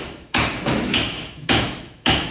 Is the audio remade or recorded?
remade